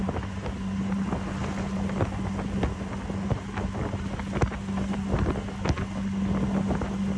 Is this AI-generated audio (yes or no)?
no